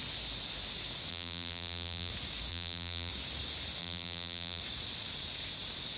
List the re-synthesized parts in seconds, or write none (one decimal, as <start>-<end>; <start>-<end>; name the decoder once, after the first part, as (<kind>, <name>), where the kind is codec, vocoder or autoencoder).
1.1-2.1 (vocoder, BigVGAN v2); 2.5-3.1; 3.8-4.6